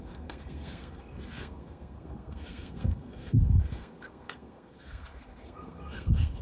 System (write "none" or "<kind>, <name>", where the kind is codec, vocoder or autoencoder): codec, SNAC